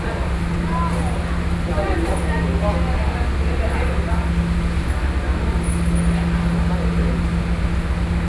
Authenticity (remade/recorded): recorded